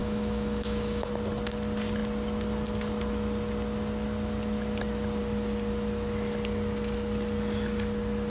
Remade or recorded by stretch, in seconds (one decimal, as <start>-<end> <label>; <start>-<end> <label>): 0.0-1.1 remade; 1.1-8.3 recorded